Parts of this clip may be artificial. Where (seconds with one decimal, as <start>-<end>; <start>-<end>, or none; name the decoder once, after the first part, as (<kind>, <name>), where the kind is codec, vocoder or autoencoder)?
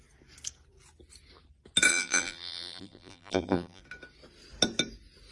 1.9-3.8 (vocoder, BigVGAN v2)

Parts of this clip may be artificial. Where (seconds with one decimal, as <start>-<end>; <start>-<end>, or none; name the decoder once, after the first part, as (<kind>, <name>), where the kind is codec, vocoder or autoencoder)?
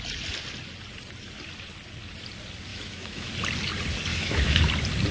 2.7-3.3 (autoencoder, DAC-VAE); 4.1-4.6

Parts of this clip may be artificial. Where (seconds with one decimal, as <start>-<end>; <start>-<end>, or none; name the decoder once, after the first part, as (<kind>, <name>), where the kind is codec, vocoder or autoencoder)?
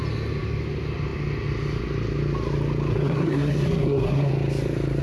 2.9-4.3 (codec, SNAC)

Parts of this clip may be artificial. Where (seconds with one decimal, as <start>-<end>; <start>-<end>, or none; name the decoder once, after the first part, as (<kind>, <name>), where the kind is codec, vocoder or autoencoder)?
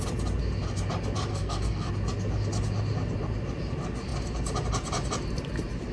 1.3-1.9 (codec, SNAC)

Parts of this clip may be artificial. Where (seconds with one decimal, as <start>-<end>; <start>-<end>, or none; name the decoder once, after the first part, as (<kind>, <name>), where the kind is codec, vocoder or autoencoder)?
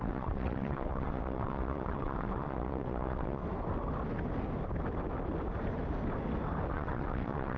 0.0-3.4 (vocoder, WaveNeXt); 6.7-7.6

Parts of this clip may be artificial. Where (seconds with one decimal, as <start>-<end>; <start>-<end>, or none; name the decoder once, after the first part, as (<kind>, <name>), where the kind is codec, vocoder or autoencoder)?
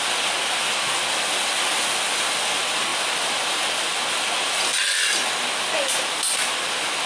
none